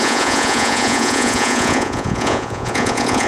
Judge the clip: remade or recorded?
remade